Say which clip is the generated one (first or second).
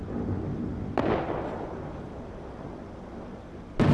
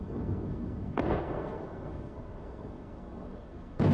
second